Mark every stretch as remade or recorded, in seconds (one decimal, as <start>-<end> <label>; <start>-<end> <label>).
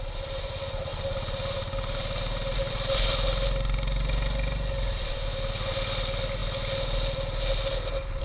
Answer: 0.0-8.2 recorded